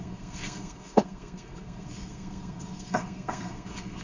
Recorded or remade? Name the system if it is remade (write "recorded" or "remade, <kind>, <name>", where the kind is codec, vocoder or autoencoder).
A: remade, codec, SNAC